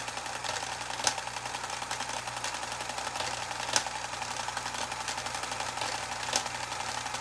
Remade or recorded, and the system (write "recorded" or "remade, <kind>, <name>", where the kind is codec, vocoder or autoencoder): recorded